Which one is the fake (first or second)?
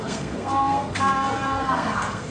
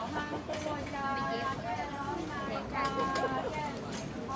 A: first